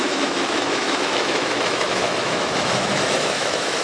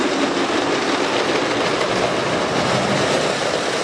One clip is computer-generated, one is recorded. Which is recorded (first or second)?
second